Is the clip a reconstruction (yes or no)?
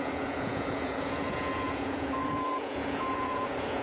yes